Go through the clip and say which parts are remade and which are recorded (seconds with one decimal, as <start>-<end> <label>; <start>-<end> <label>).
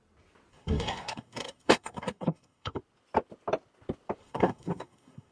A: 0.0-0.5 recorded; 0.5-2.8 remade; 2.8-4.2 recorded; 4.2-5.3 remade